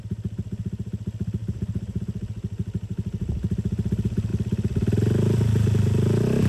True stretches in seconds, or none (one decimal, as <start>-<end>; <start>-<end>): 0.0-1.4; 2.0-6.5

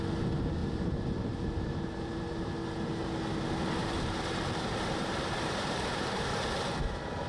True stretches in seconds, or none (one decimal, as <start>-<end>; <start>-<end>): 0.0-0.6; 3.1-3.8; 6.8-7.3

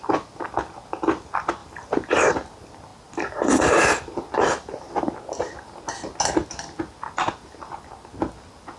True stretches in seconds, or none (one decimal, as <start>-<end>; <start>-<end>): 0.0-1.6; 2.3-8.8